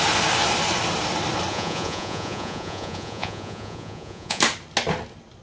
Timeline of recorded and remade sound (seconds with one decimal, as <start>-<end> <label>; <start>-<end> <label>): 0.0-1.5 recorded; 1.5-4.4 remade; 4.4-5.4 recorded